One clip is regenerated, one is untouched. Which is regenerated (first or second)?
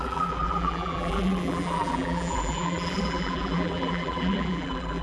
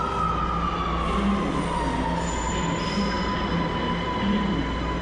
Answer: first